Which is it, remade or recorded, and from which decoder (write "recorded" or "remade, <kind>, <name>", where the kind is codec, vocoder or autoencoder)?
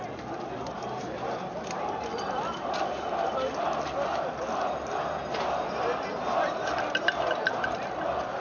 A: recorded